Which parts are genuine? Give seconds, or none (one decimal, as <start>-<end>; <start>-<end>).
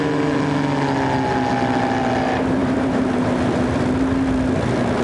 0.0-2.6; 3.2-5.0